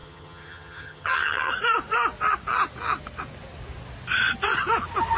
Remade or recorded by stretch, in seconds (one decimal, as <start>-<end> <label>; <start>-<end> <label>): 0.0-1.5 remade; 1.5-5.2 recorded